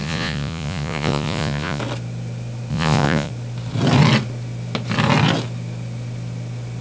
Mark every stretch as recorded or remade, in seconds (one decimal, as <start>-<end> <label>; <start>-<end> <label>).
0.0-1.8 remade; 1.8-2.7 recorded; 2.7-3.3 remade; 3.3-6.8 recorded